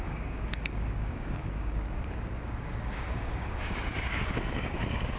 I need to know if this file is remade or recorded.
remade